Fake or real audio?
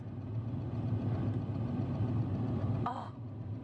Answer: real